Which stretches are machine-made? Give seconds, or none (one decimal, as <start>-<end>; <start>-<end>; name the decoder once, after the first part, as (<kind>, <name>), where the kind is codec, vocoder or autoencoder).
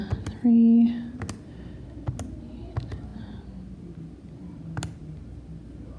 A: none